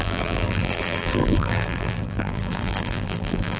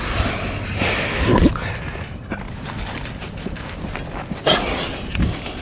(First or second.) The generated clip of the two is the first